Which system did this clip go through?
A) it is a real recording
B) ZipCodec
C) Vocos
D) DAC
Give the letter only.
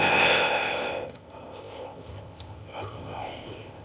B